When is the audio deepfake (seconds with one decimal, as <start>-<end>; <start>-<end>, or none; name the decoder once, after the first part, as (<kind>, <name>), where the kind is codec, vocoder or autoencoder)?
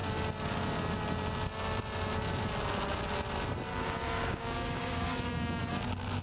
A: 3.7-5.6 (codec, DAC)